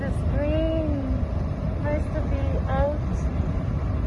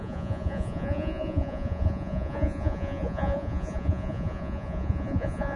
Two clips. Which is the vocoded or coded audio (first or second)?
second